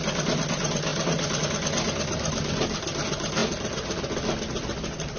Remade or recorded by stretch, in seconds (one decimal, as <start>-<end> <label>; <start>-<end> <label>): 0.0-5.2 recorded